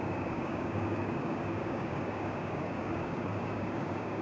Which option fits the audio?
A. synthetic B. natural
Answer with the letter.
A